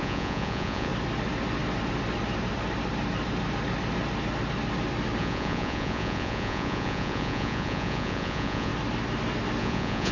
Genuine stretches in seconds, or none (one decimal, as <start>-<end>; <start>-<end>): 0.9-5.2; 8.7-9.6